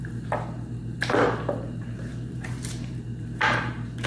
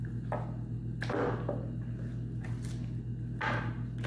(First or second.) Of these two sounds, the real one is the second